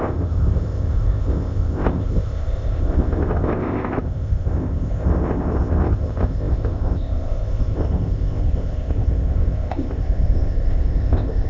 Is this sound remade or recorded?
remade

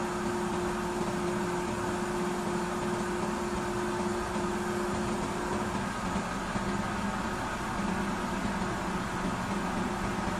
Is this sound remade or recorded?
recorded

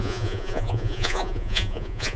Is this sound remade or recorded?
remade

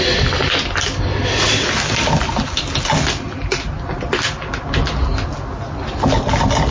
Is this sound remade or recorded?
recorded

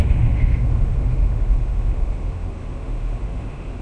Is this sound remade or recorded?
remade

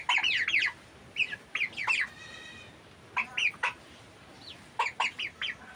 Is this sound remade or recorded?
recorded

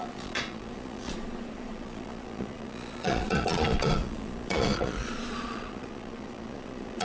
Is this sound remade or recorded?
remade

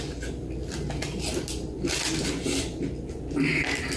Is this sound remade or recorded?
recorded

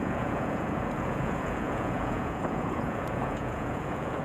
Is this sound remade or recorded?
remade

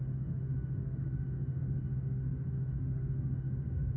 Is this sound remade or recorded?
remade